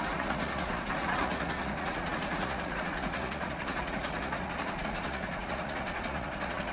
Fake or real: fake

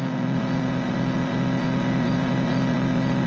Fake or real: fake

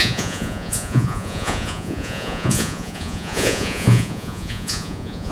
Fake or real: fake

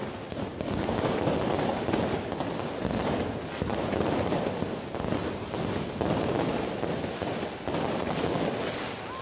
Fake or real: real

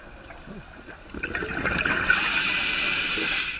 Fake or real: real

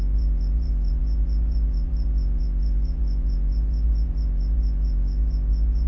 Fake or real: fake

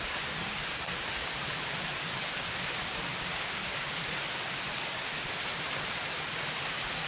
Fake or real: real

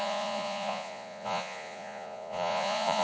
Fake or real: fake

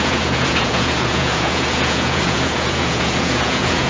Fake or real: fake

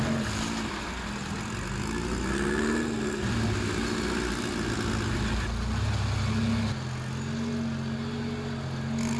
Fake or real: real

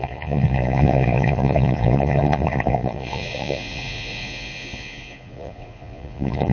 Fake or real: fake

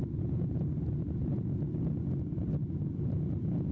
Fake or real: real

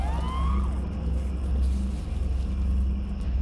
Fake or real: real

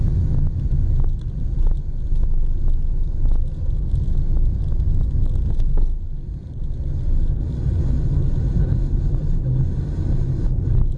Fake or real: real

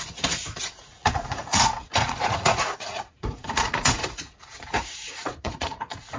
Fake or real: fake